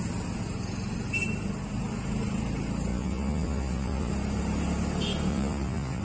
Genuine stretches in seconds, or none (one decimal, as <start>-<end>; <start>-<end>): 0.0-2.9; 4.1-5.3